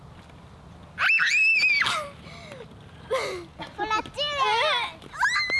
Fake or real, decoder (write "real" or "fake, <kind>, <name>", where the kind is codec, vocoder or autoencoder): real